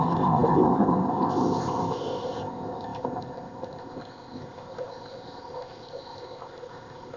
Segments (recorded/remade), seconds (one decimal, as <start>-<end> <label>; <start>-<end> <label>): 0.0-7.2 remade